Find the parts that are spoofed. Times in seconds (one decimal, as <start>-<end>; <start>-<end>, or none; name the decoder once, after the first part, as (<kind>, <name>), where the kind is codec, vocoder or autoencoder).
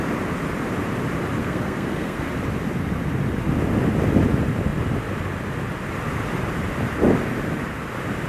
1.4-2.3 (codec, SNAC)